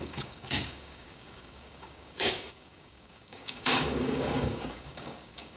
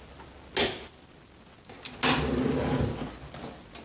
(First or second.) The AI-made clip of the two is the first